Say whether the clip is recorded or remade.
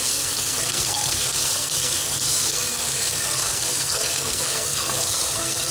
remade